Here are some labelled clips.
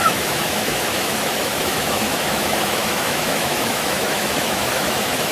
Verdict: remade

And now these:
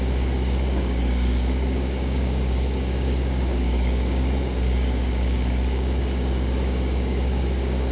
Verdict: remade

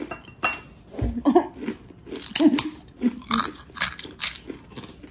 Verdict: recorded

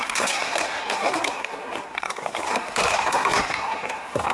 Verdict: remade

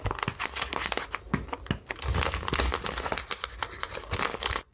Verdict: recorded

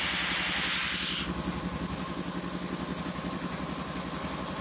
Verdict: recorded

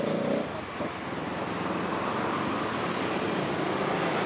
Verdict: remade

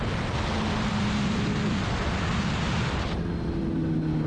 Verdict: recorded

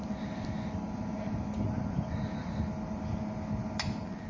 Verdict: recorded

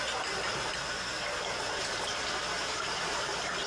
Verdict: recorded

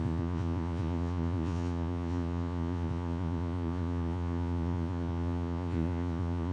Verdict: remade